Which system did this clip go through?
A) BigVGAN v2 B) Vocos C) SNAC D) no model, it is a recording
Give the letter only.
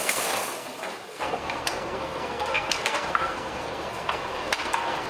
C